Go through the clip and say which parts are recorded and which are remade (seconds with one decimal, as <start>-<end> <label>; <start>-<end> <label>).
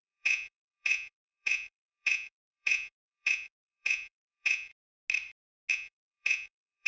0.0-4.7 remade; 4.7-5.7 recorded; 5.7-6.9 remade